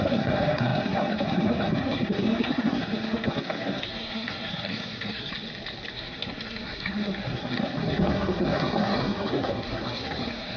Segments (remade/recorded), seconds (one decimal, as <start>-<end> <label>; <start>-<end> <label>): 0.0-5.3 remade; 5.3-5.9 recorded; 5.9-10.6 remade